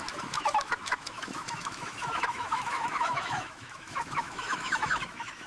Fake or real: fake